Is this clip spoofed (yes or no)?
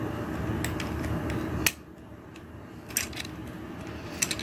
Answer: no